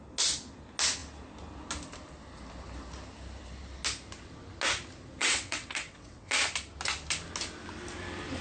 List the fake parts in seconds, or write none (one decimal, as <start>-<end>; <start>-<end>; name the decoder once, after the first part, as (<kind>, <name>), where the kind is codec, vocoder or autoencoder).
5.2-6.3 (vocoder, WaveNeXt)